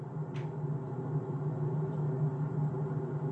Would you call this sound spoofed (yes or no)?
no